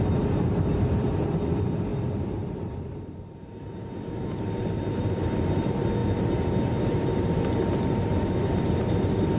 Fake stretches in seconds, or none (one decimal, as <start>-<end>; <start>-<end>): 0.0-6.0; 6.8-9.4